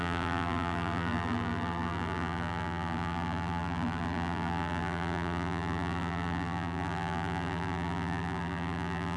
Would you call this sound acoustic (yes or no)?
no